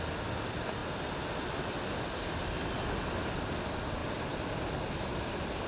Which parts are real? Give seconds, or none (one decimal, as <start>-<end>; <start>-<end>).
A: 0.0-5.7